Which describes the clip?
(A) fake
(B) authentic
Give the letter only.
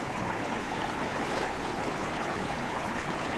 A